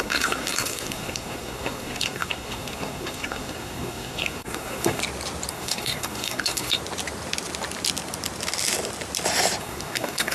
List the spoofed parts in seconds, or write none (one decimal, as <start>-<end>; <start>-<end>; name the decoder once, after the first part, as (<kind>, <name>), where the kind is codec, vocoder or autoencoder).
0.0-5.0 (codec, SNAC); 5.5-6.8; 9.6-10.3